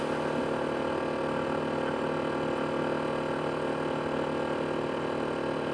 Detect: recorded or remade recorded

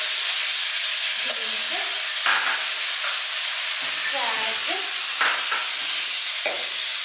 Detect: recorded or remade recorded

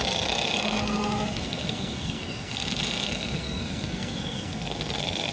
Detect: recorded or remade remade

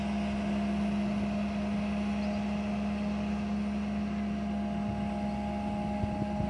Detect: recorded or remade recorded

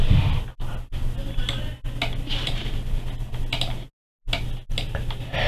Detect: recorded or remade recorded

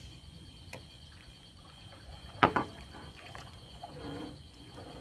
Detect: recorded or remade remade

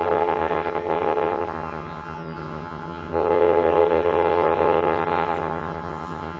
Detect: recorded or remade remade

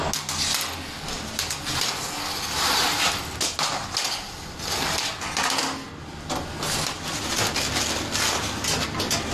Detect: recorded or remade recorded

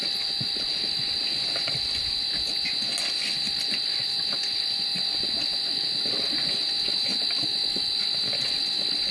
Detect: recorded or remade recorded